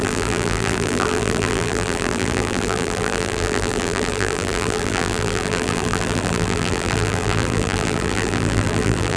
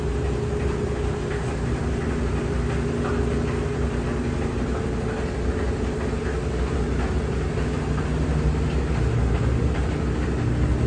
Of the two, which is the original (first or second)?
second